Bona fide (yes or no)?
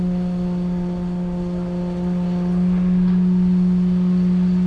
yes